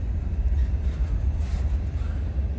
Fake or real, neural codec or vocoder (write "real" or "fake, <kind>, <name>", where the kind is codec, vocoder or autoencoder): real